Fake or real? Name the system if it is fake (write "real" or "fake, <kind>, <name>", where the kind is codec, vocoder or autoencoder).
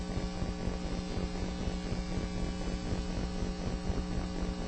real